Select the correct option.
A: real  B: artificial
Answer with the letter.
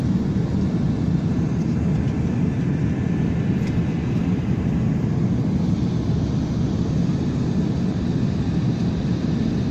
A